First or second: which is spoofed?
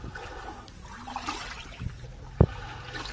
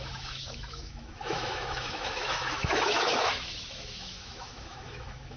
second